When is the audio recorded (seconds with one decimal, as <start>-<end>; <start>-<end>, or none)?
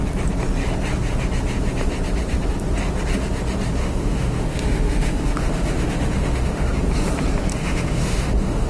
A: 0.0-3.8; 6.7-7.5